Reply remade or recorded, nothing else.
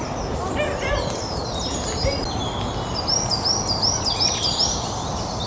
recorded